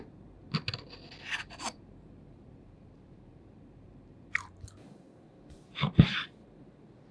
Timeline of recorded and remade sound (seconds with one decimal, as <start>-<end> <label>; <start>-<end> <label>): 0.0-0.4 remade; 0.4-1.4 recorded; 1.4-7.1 remade